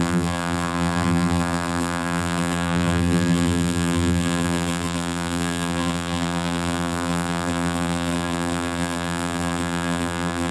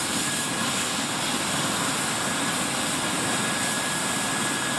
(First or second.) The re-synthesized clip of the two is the first